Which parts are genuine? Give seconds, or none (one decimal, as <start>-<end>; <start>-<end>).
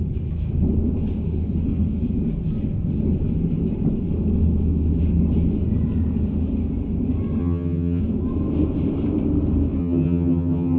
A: 0.0-7.4; 8.0-9.8